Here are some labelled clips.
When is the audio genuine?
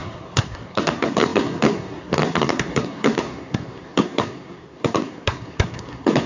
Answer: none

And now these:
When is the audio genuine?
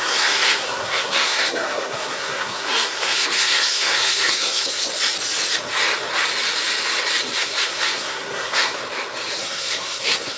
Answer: 4.8-7.4; 8.8-9.4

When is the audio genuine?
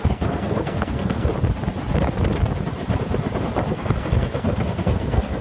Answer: 1.3-3.7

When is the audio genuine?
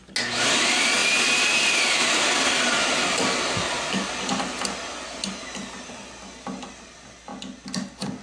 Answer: 0.0-8.2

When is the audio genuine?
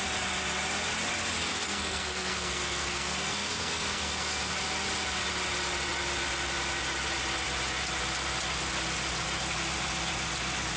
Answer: 0.0-1.5; 4.5-10.8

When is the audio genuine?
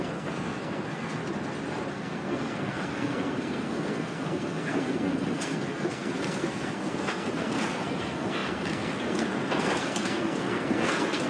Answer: 1.2-1.9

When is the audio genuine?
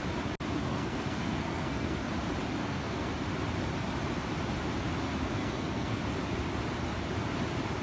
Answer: 0.0-0.6; 2.1-2.6; 3.1-5.3; 6.0-7.8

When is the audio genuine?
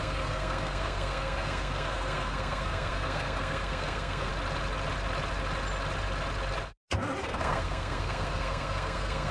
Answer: 4.3-7.2